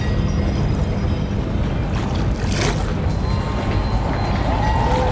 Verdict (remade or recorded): recorded